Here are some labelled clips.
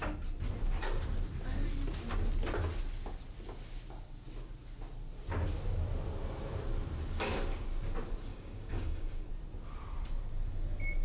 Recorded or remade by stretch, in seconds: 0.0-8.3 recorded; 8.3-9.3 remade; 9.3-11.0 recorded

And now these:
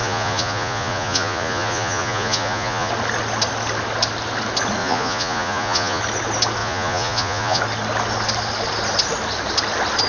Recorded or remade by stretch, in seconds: 0.0-2.9 remade; 2.9-4.8 recorded; 4.8-6.0 remade; 6.0-6.6 recorded; 6.6-7.6 remade; 7.6-10.1 recorded

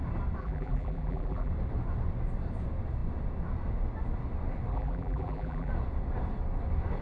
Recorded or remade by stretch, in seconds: 0.0-0.4 recorded; 0.4-1.5 remade; 1.5-4.7 recorded; 4.7-5.7 remade; 5.7-7.0 recorded

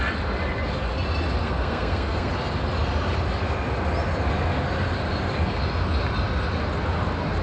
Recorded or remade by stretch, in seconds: 0.0-1.4 recorded; 1.4-2.3 remade; 2.3-7.4 recorded